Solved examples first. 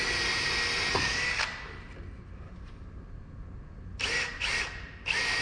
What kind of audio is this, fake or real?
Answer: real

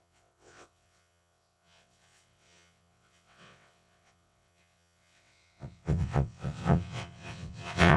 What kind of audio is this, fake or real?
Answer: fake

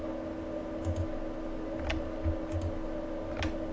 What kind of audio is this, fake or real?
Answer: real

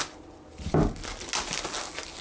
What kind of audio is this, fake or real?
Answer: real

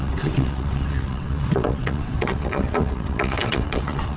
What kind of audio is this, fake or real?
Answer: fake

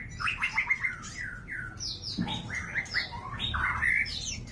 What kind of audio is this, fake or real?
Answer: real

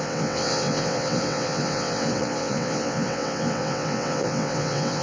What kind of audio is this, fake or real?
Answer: fake